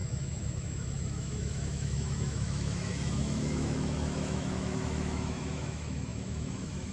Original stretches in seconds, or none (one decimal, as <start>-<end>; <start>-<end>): none